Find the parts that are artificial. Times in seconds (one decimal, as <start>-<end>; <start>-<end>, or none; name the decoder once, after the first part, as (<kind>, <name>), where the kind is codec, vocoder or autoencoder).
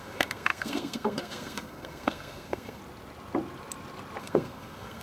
0.0-2.8 (codec, SNAC); 4.2-5.0